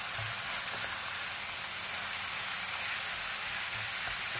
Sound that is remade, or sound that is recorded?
recorded